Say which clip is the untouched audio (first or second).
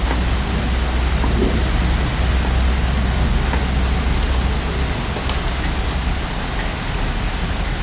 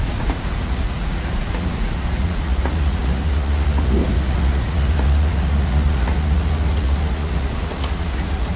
first